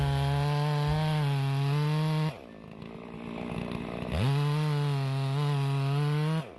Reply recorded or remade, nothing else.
recorded